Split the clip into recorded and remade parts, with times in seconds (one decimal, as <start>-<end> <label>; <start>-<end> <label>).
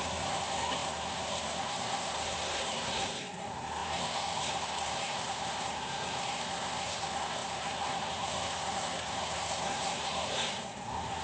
0.0-11.2 remade